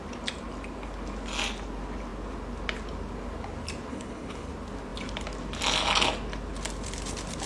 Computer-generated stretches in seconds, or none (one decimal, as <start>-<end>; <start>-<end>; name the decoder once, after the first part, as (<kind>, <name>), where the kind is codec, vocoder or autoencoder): 3.9-4.5 (codec, HILCodec)